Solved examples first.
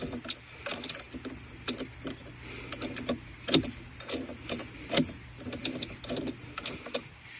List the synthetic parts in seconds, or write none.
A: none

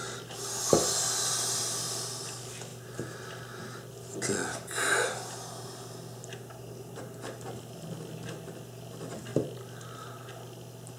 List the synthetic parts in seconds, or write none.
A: none

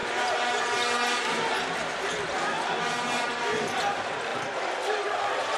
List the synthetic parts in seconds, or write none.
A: 2.8-4.3 (vocoder, BigVGAN v2); 4.9-5.6